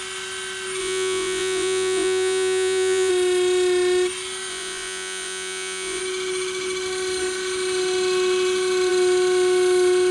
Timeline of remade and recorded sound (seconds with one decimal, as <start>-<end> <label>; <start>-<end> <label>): 0.0-0.8 recorded; 0.8-3.1 remade; 3.1-4.5 recorded; 4.5-6.0 remade; 6.0-10.1 recorded